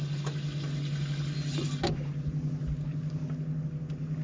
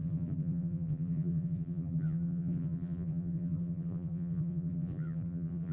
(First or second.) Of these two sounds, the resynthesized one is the second